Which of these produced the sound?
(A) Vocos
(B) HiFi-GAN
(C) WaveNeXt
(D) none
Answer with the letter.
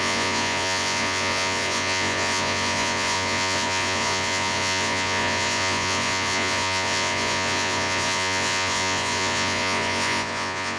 A